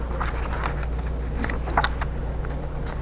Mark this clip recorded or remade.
recorded